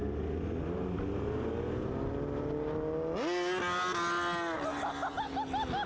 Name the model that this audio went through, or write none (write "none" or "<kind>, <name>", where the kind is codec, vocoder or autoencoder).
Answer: none